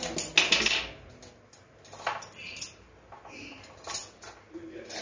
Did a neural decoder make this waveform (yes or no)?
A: no